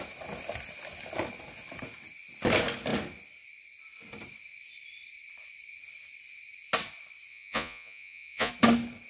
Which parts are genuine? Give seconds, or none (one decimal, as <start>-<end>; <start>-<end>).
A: 0.0-7.3; 8.5-9.1